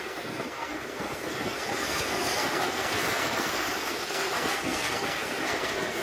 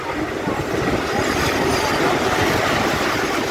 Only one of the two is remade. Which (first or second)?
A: first